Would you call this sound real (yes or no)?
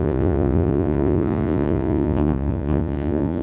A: no